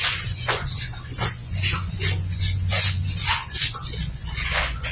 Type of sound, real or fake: fake